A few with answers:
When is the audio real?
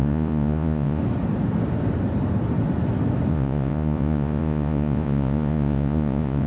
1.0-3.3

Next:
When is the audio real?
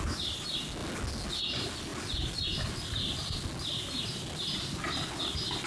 0.0-5.7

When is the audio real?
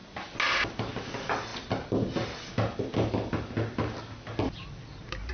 0.0-5.3